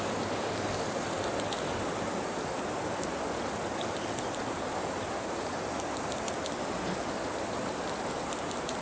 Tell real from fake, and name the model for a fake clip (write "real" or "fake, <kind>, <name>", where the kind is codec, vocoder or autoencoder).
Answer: real